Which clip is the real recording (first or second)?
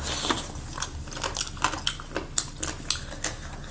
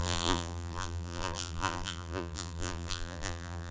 first